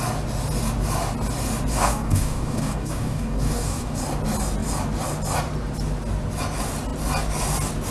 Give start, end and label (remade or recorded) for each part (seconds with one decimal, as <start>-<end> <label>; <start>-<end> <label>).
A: 0.0-1.7 recorded; 1.7-4.0 remade; 4.0-7.9 recorded